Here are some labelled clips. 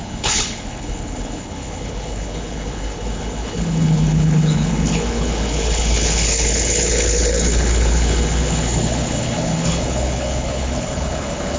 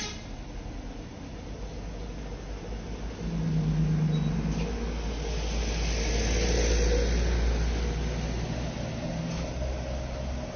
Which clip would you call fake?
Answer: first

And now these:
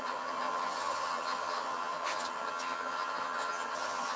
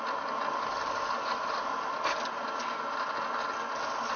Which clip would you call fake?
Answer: first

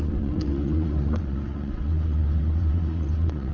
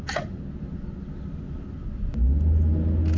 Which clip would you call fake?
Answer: first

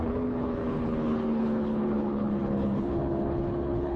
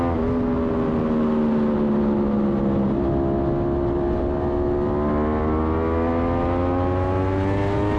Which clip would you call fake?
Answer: first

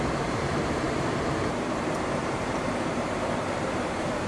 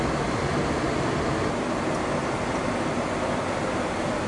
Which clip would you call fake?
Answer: first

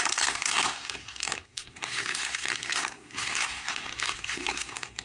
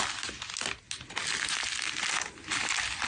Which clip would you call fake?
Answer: first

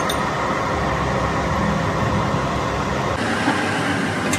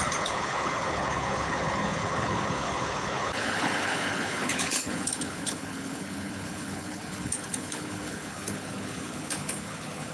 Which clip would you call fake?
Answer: second